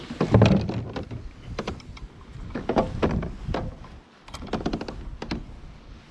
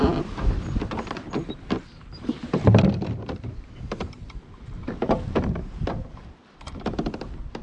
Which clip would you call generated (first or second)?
second